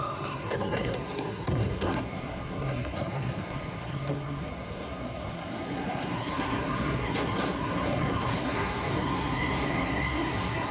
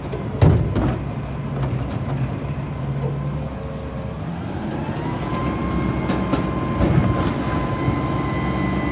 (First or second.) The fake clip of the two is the first